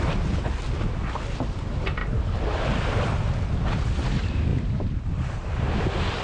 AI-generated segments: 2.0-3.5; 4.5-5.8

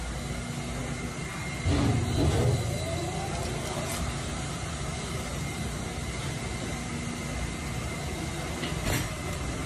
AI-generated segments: none

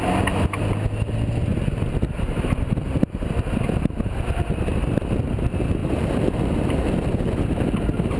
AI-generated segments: 5.8-8.2

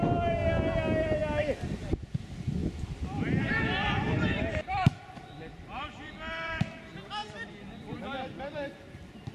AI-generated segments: 2.6-6.6; 7.2-8.8

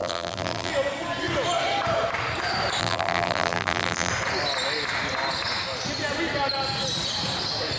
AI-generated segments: 0.0-0.7; 2.8-4.1

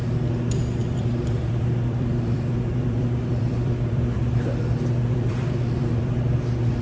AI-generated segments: 0.8-4.2; 5.0-6.2

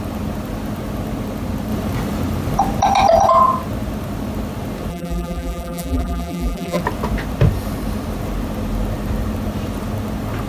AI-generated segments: 4.9-6.8

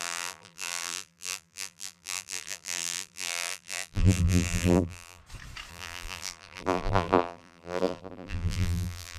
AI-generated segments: 0.0-5.2; 5.7-9.2